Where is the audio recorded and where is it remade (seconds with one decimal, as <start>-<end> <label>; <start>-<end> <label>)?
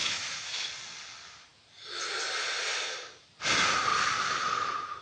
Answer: 0.0-0.7 remade; 0.7-5.0 recorded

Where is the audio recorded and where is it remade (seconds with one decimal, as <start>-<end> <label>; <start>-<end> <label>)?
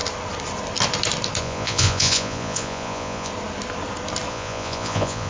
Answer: 0.0-1.4 recorded; 1.4-3.3 remade; 3.3-4.3 recorded; 4.3-5.3 remade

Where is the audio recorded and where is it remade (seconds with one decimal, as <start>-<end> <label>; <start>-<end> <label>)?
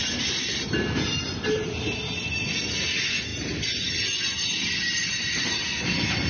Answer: 0.0-6.3 recorded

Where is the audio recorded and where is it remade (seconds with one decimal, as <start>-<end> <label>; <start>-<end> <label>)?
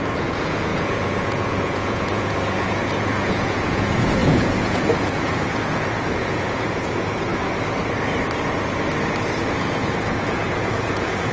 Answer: 0.0-7.3 remade; 7.3-9.4 recorded; 9.4-11.3 remade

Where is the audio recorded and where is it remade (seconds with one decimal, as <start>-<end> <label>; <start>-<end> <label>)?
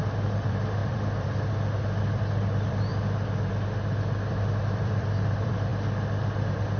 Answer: 0.0-2.9 remade; 2.9-4.3 recorded; 4.3-5.7 remade; 5.7-6.8 recorded